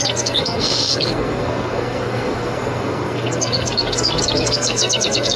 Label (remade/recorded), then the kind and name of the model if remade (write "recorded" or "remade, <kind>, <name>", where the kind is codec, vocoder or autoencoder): remade, codec, SNAC